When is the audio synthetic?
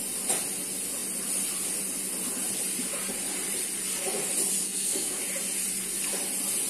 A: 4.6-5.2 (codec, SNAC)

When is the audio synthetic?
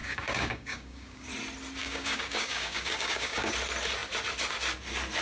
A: 0.0-1.3 (codec, DAC); 1.8-3.5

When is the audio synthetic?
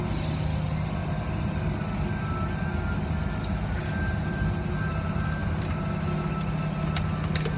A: none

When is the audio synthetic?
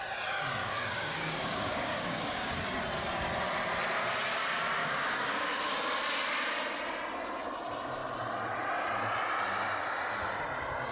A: 0.6-2.6 (codec, DAC); 4.8-5.7